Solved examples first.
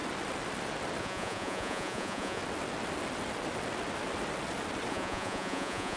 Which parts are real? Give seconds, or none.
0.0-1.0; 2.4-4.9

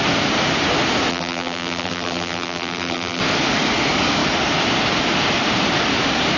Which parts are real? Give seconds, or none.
0.0-1.1; 3.2-6.4

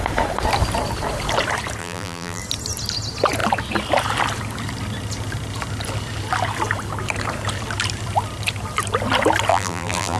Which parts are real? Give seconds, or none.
0.0-1.8; 2.4-9.5

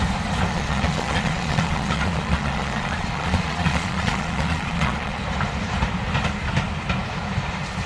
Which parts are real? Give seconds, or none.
0.0-0.5; 5.2-7.9

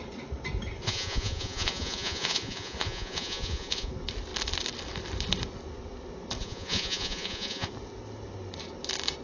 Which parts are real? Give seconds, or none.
0.0-0.8; 3.9-6.4; 7.7-9.2

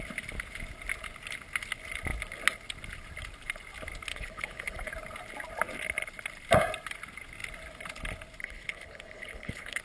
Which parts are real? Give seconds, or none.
0.0-4.1; 4.9-8.4

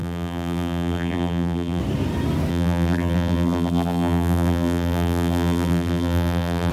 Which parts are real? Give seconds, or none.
1.8-2.5

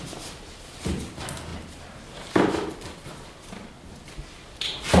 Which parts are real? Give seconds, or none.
0.0-5.0